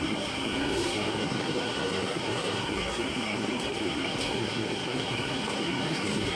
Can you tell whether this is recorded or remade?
remade